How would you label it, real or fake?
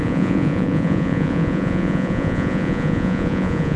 fake